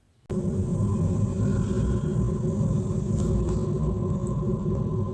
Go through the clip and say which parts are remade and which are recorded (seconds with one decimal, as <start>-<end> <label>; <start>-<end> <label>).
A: 0.0-5.1 recorded